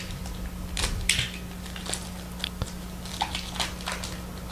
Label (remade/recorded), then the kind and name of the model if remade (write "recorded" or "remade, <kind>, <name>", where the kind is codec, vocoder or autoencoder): recorded